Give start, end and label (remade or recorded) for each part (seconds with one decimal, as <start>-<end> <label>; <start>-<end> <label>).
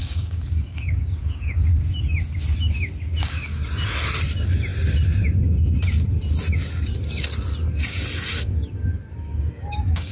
0.0-1.7 remade; 1.7-3.2 recorded; 3.2-3.6 remade; 3.6-8.4 recorded; 8.4-8.9 remade; 8.9-9.4 recorded; 9.4-10.1 remade